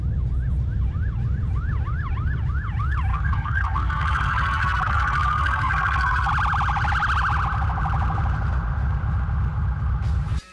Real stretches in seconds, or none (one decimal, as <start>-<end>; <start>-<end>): 0.0-3.1; 6.3-10.5